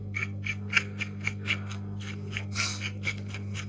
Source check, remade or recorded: remade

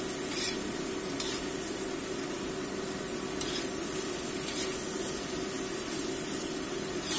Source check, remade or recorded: recorded